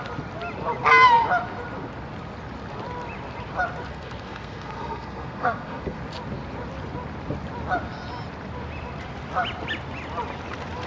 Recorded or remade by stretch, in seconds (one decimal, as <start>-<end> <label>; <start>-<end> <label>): 0.0-3.9 recorded; 3.9-6.0 remade; 6.0-10.9 recorded